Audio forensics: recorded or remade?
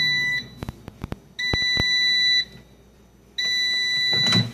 recorded